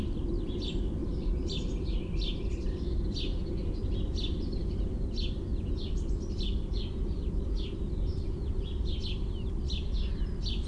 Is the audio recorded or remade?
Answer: recorded